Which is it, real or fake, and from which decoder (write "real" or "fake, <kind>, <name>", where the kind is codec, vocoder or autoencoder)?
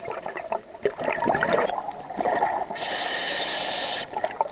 fake, vocoder, BigVGAN v2